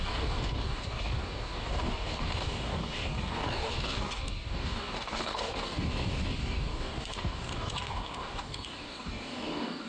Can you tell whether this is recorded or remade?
remade